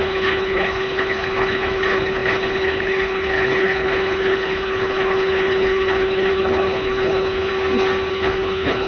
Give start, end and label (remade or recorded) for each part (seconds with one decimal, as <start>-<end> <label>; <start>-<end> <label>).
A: 0.0-7.5 remade; 7.5-8.1 recorded; 8.1-8.9 remade